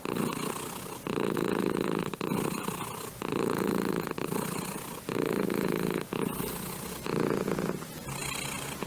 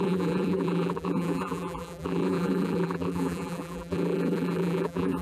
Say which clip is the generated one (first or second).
second